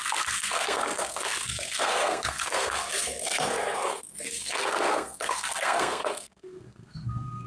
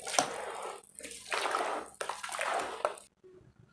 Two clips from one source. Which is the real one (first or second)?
second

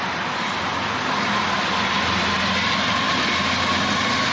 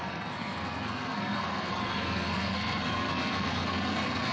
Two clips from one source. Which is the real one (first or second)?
first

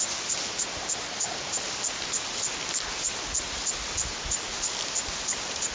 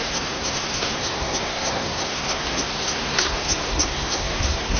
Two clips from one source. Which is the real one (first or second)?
first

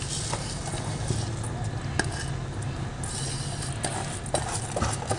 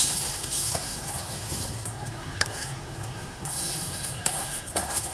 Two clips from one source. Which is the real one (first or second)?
first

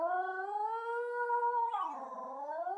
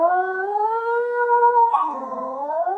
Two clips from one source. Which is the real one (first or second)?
first